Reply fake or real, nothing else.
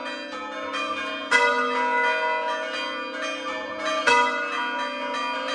real